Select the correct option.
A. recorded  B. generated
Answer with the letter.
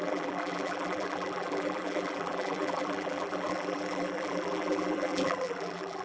B